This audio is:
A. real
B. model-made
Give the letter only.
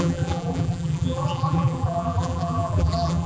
B